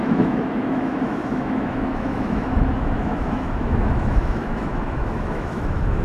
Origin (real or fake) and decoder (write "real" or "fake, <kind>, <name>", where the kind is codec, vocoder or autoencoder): fake, autoencoder, DAC-VAE